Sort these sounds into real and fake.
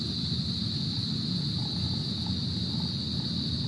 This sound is real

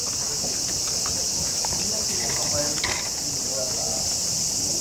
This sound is real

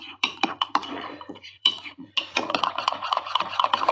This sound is fake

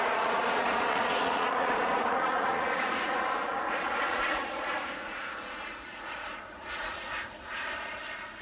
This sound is fake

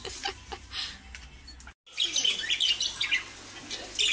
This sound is real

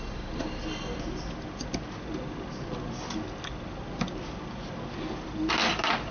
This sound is real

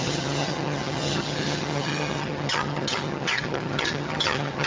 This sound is fake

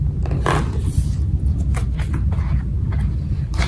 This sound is real